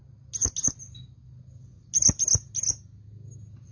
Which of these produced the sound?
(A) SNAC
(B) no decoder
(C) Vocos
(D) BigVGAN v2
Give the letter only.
B